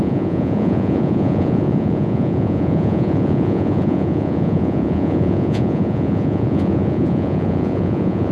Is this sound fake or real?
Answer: fake